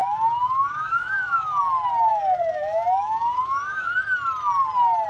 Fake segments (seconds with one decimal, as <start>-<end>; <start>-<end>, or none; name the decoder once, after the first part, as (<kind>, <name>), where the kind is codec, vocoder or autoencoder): 0.0-1.6 (autoencoder, DAC-VAE); 2.1-3.9